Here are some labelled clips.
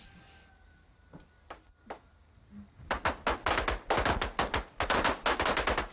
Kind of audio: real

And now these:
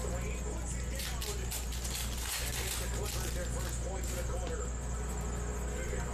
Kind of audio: real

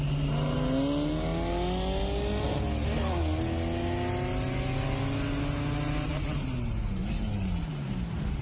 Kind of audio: real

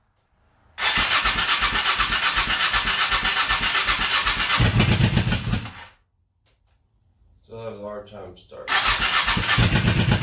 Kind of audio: real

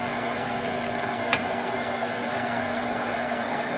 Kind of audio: fake